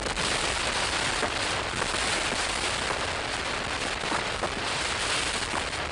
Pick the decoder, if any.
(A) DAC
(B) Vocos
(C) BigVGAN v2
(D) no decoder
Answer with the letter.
D